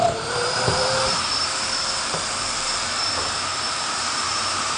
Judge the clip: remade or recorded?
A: remade